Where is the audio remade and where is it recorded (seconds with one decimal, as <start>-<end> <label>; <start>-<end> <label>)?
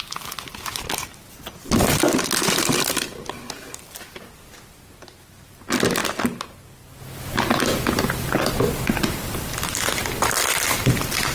0.0-11.3 recorded